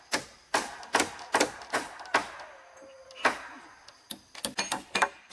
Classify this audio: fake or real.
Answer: real